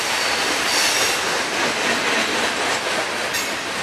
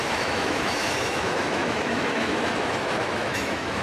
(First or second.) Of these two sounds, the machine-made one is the second